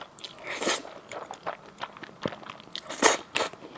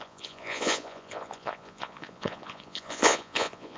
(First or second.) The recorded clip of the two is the first